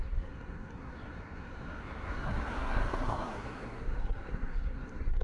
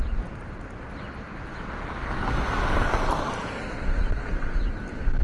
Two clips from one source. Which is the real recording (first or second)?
second